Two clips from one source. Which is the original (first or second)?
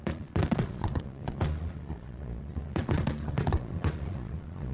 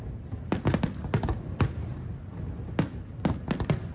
second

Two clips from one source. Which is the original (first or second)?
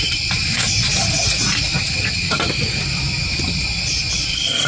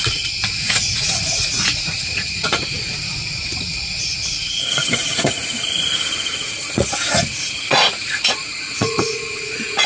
first